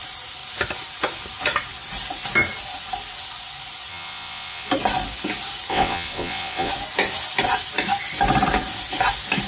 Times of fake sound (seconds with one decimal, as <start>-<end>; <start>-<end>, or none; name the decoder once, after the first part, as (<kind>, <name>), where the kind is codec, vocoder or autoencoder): 3.9-4.7 (vocoder, WaveNeXt); 5.7-6.7